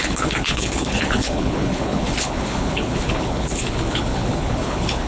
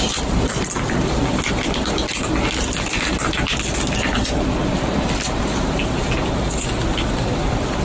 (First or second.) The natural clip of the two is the second